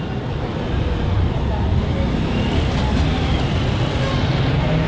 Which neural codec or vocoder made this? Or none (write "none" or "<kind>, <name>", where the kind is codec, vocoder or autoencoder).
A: none